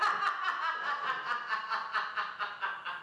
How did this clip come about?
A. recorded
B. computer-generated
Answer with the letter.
A